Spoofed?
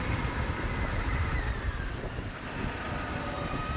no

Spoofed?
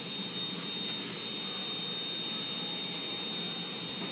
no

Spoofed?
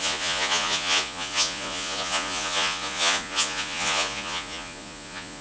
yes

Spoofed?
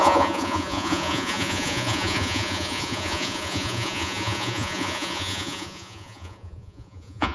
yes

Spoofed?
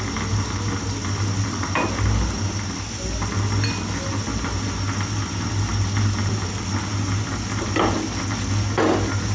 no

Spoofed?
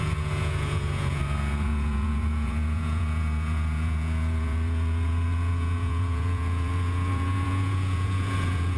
yes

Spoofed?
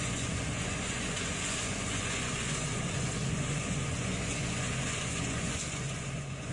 yes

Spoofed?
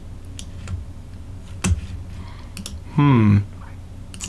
no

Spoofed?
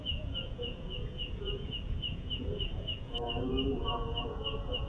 yes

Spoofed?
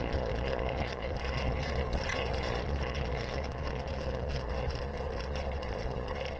yes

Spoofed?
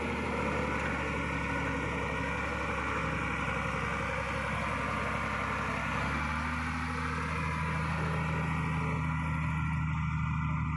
no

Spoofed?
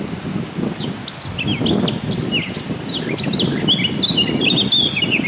no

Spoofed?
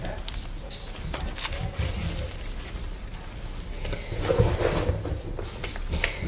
no